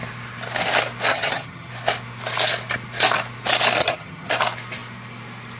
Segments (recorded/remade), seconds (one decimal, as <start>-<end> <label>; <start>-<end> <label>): 0.0-1.1 recorded; 1.1-1.7 remade; 1.7-3.8 recorded; 3.8-4.3 remade; 4.3-5.6 recorded